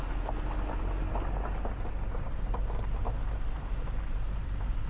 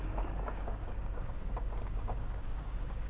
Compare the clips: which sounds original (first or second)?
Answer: first